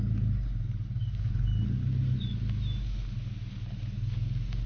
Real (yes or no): yes